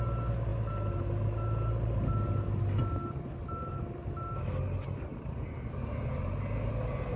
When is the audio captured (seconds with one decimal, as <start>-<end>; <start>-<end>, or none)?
0.0-7.2